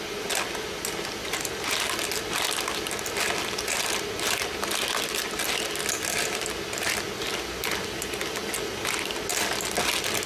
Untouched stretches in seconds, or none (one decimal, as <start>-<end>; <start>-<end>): 0.0-10.3